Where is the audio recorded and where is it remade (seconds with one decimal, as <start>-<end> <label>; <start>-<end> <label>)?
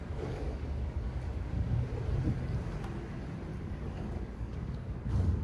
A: 0.0-1.9 remade; 1.9-3.5 recorded; 3.5-5.4 remade